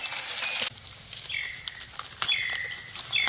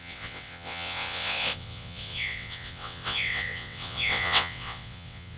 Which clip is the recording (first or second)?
first